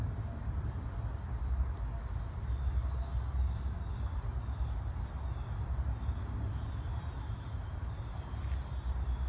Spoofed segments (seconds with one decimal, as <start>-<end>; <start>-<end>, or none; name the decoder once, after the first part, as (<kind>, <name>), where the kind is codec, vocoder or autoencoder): none